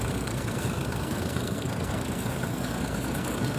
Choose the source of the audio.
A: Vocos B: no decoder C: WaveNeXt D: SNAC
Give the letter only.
D